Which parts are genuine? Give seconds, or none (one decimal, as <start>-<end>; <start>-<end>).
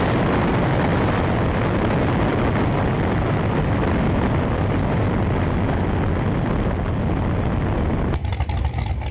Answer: 0.0-0.9; 1.7-2.3; 5.8-8.2